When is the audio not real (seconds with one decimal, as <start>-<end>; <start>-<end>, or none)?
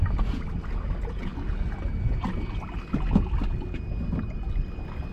none